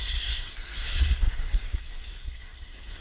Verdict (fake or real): fake